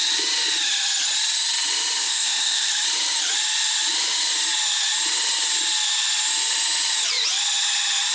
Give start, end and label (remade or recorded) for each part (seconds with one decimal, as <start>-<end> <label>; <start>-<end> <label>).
0.0-2.0 recorded; 2.0-2.7 remade; 2.7-8.1 recorded